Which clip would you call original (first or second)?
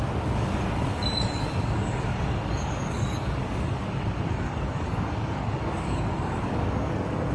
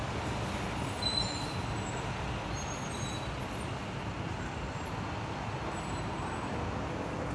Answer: second